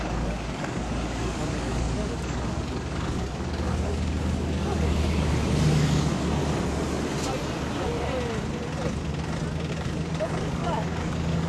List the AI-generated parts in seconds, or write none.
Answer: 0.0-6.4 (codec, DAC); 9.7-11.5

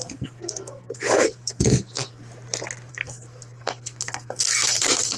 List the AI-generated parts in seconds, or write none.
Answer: 0.0-2.2 (codec, SNAC); 2.9-5.2

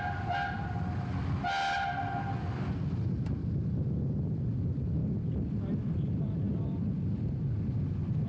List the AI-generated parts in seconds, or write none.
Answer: none

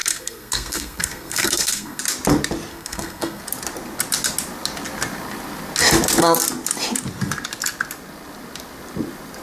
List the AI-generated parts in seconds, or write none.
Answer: 0.0-2.0 (codec, SNAC); 2.7-3.4

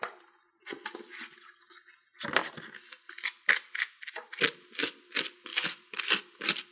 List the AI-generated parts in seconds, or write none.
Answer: 5.5-6.1 (vocoder, BigVGAN v2)

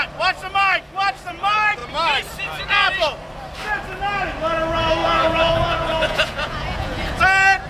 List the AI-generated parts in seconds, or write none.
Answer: 5.0-7.2 (vocoder, Vocos)

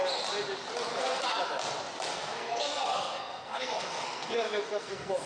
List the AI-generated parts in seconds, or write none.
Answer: 0.9-1.4 (codec, SNAC); 2.1-5.3